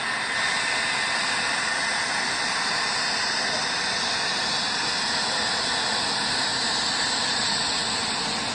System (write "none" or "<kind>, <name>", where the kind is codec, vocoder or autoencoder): none